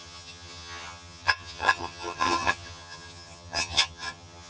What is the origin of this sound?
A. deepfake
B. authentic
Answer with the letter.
A